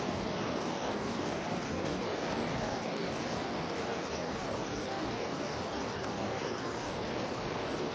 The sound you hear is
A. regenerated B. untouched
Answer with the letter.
A